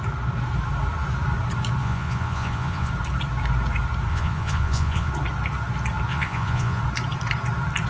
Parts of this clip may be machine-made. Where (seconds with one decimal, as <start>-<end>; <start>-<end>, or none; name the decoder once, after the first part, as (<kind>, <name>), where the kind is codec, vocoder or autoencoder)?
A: 1.8-2.9 (vocoder, Vocos); 4.1-5.1; 6.1-6.8